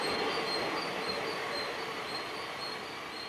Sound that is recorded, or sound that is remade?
recorded